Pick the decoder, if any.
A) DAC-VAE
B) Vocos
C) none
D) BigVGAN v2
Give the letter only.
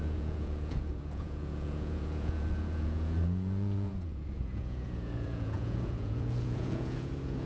B